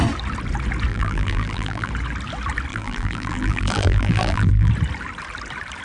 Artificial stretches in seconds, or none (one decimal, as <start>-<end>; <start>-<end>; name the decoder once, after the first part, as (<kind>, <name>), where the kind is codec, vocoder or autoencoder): 0.9-1.9 (vocoder, BigVGAN v2); 2.7-4.7